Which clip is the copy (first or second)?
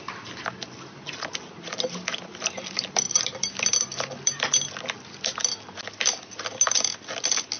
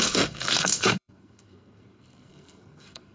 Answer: second